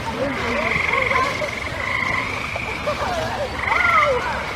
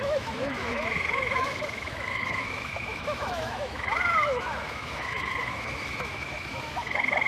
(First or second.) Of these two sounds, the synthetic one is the second